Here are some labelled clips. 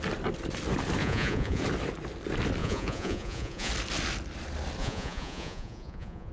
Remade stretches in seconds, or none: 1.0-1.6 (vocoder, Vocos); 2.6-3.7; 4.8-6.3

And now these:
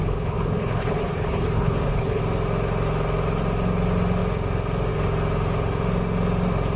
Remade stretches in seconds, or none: 0.0-2.2 (codec, HILCodec)

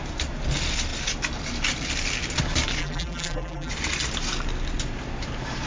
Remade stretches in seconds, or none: 2.8-3.7 (vocoder, BigVGAN v2)